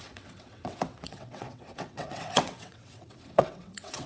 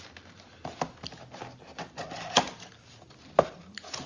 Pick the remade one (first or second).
first